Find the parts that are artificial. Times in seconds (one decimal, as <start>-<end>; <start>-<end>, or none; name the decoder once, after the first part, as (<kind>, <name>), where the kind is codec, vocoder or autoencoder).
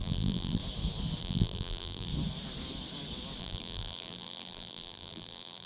0.0-0.6 (vocoder, BigVGAN v2); 1.2-2.1; 3.4-5.7